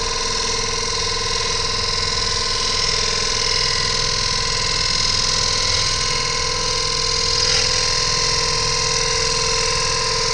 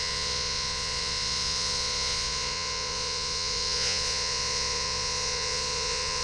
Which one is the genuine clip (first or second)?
first